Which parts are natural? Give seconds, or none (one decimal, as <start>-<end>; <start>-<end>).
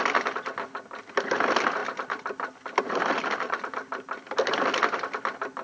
0.0-5.6